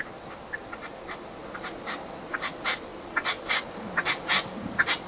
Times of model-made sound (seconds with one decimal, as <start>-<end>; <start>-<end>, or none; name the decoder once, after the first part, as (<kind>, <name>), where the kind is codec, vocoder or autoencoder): 0.0-1.4 (vocoder, BigVGAN v2); 2.9-3.6